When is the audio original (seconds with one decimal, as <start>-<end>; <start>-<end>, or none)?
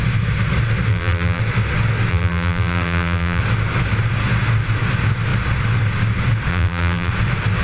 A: 0.0-0.9; 1.4-2.1; 3.4-6.5; 7.1-7.6